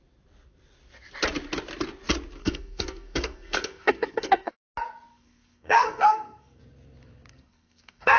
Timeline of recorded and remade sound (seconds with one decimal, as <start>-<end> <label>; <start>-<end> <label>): 0.0-2.4 recorded; 2.4-4.5 remade; 4.5-5.1 recorded; 5.1-6.6 remade; 6.6-7.3 recorded; 7.3-8.2 remade